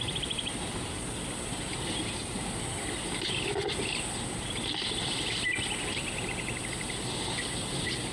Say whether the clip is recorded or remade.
remade